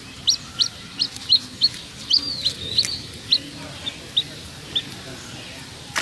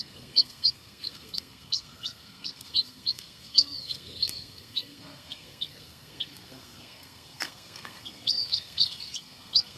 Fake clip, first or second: second